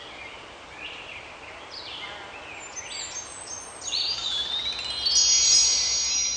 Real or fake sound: real